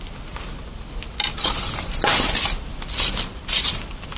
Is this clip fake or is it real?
real